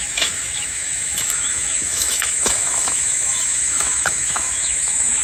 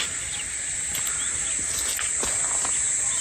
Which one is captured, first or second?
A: second